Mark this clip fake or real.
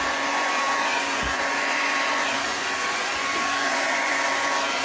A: fake